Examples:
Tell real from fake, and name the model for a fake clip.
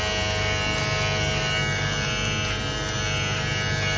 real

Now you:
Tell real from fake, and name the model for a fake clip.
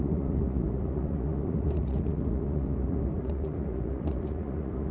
fake, vocoder, Vocos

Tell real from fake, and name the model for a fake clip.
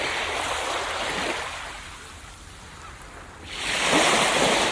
real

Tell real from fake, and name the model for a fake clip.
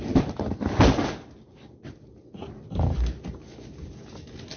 real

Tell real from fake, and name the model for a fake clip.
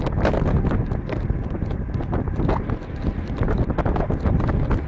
real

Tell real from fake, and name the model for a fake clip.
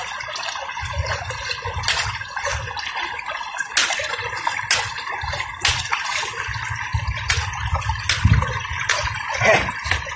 real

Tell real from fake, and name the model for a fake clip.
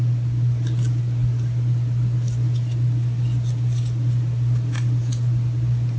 real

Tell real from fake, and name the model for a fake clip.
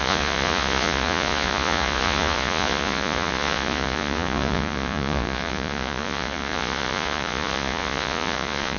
fake, vocoder, Vocos